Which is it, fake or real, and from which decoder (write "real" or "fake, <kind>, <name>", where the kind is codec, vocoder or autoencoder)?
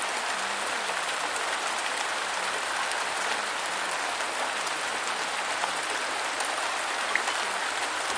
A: real